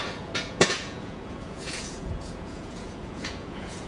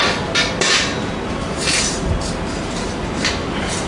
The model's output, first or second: first